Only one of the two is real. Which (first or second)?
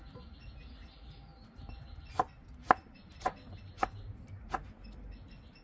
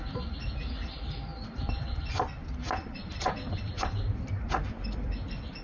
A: first